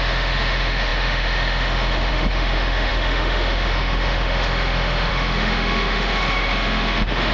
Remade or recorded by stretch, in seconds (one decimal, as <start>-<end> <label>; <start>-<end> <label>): 0.0-7.3 remade